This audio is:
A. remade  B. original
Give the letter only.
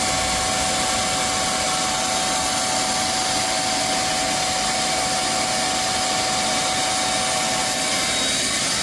B